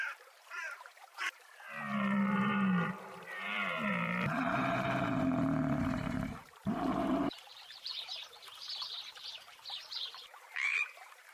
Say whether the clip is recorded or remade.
remade